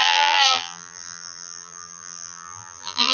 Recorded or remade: remade